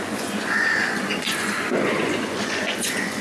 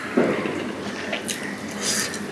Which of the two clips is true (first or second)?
second